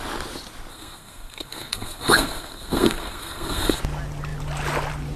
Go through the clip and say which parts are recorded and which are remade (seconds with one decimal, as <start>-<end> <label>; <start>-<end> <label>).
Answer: 0.0-0.7 recorded; 0.7-3.8 remade; 3.8-5.2 recorded